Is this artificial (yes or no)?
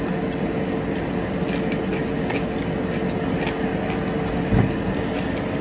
no